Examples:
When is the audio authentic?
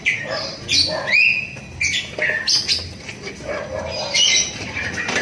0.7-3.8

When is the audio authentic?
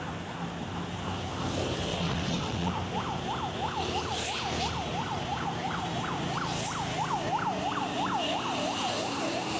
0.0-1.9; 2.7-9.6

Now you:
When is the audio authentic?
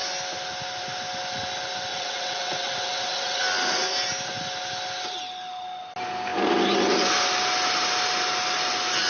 0.0-1.9; 3.4-9.1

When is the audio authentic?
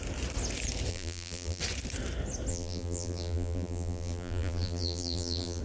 0.0-0.9; 1.6-2.5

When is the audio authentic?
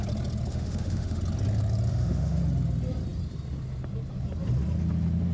0.0-0.5; 1.2-1.9; 2.4-5.3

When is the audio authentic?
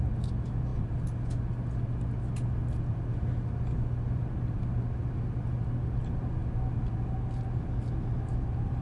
0.0-8.8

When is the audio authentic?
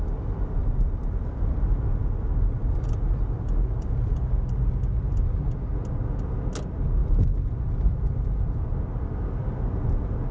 0.0-0.6; 1.5-2.4; 4.3-7.0; 8.8-10.3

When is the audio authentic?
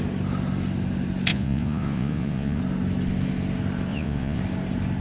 0.0-1.3; 2.6-3.9; 4.4-5.0